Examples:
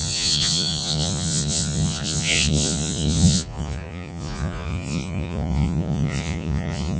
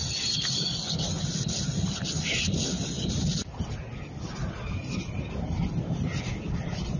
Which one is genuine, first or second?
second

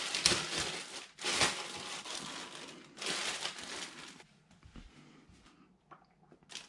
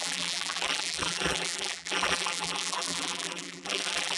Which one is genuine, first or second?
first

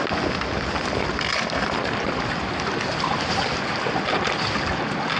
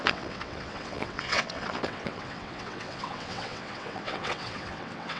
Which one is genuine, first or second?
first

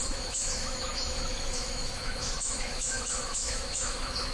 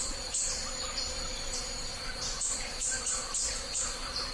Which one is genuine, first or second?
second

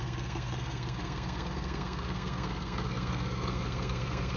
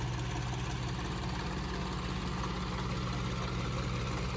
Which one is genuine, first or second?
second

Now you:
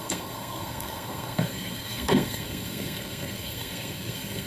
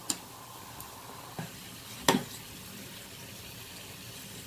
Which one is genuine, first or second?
second